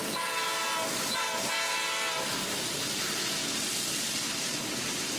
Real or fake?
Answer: real